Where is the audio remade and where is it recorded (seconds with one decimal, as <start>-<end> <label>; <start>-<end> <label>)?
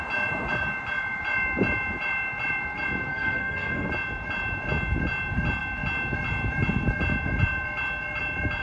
0.0-3.1 recorded; 3.1-3.9 remade; 3.9-8.6 recorded